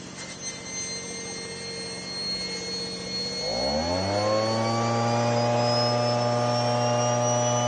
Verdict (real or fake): real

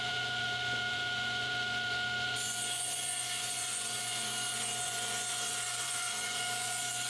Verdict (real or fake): fake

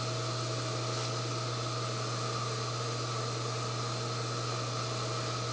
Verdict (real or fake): real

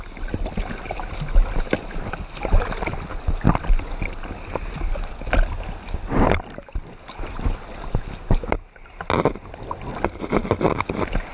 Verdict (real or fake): real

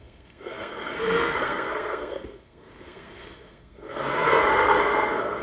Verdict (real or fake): fake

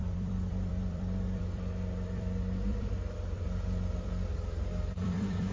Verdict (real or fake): fake